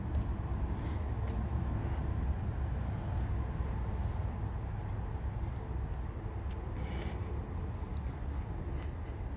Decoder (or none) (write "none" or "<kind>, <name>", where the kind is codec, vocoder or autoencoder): none